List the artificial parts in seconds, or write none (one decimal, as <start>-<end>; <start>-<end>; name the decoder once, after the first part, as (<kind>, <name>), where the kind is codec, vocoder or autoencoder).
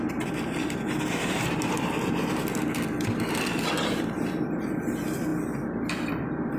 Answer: none